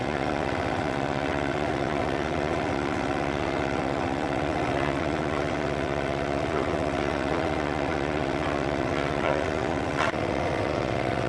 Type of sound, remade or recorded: remade